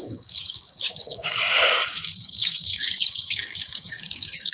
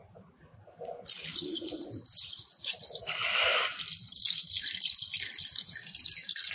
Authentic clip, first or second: second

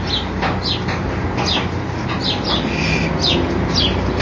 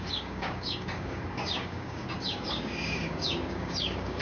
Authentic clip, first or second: first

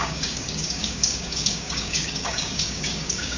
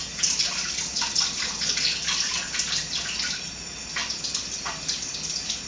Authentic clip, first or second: second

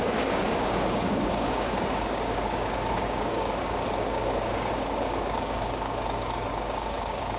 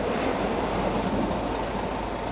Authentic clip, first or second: second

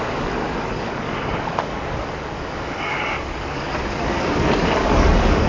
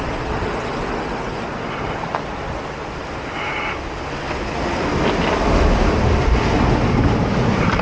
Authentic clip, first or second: second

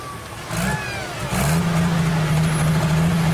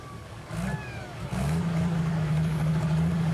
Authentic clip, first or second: first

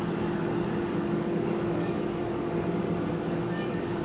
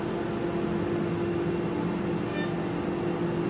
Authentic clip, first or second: second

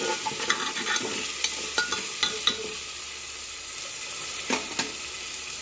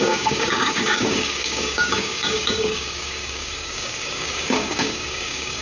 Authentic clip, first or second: first